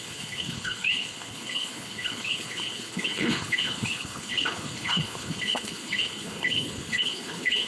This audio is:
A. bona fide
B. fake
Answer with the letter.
B